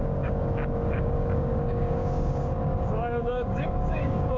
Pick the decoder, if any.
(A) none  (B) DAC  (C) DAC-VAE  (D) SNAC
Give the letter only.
B